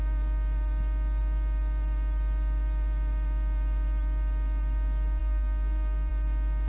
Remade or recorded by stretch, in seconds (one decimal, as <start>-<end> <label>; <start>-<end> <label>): 0.0-5.2 recorded; 5.2-6.1 remade; 6.1-6.7 recorded